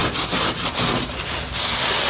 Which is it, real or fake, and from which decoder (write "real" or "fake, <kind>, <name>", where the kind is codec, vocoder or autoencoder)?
real